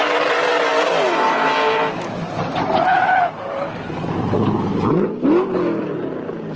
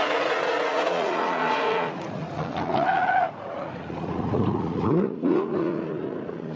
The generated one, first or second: second